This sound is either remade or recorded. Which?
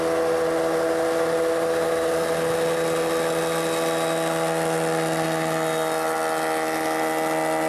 recorded